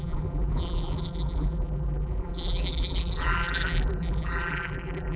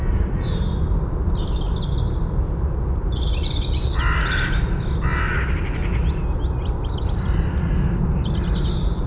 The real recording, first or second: second